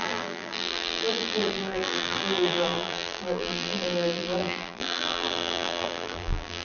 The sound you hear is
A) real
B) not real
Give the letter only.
B